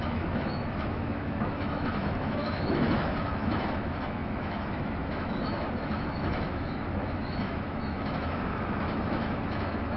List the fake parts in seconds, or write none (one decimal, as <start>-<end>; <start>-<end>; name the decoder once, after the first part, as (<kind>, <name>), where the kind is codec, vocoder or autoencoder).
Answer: 0.0-10.0 (autoencoder, DAC-VAE)